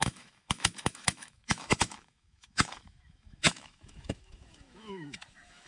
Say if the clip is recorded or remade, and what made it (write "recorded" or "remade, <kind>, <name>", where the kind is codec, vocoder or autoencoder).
remade, autoencoder, DAC-VAE